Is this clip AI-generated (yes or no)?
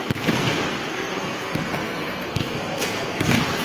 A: yes